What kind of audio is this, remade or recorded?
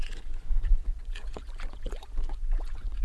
remade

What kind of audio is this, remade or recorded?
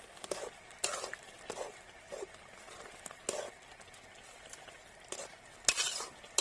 recorded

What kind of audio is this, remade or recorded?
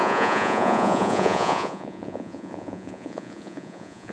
remade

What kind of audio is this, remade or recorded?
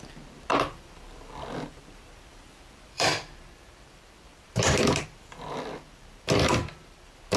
remade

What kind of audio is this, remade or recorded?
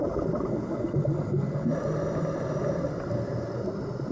recorded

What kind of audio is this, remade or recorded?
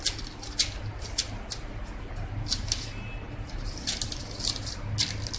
recorded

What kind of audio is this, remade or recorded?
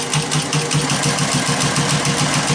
recorded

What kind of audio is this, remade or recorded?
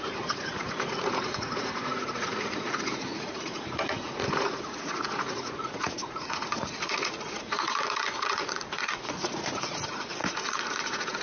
remade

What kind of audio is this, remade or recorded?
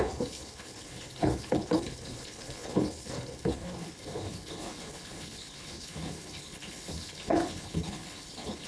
remade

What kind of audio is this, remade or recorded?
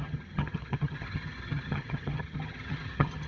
remade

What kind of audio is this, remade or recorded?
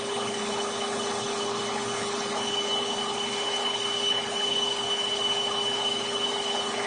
remade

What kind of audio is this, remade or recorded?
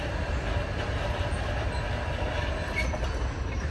recorded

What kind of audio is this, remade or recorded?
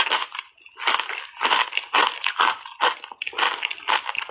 recorded